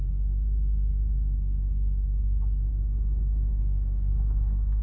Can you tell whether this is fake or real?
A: fake